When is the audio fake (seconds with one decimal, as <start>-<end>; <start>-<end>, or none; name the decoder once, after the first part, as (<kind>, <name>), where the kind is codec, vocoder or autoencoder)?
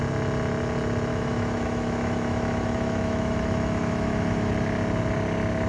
1.1-4.5 (autoencoder, DAC-VAE)